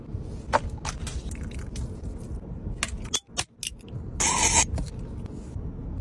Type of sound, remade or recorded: recorded